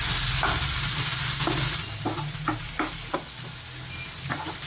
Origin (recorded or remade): recorded